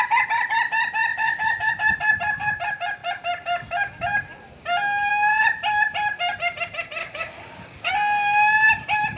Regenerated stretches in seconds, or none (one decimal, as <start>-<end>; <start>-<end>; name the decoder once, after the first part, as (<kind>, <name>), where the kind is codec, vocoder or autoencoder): 1.1-1.7 (codec, DAC); 7.0-7.9